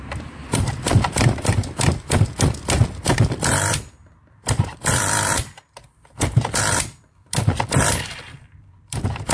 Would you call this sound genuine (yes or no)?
no